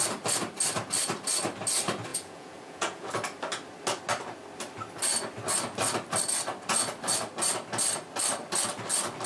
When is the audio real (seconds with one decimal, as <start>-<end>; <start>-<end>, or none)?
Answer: 0.0-2.1; 3.1-9.3